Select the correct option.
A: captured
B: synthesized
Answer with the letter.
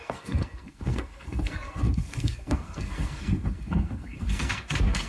B